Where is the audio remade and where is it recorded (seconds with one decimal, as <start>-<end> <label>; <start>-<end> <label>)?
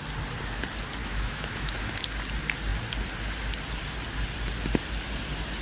0.0-1.0 recorded; 1.0-1.8 remade; 1.8-5.6 recorded